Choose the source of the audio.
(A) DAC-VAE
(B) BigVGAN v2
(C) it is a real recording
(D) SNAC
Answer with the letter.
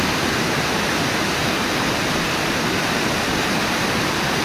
C